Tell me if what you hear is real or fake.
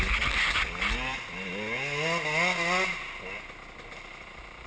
real